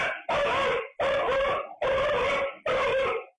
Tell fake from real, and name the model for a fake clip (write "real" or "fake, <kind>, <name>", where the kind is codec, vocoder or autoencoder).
real